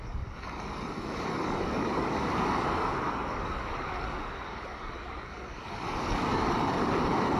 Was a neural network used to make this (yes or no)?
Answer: yes